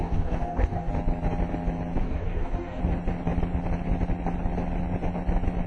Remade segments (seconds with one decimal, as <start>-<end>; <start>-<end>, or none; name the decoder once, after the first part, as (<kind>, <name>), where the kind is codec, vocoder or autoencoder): 0.0-0.9 (codec, DAC); 2.0-2.8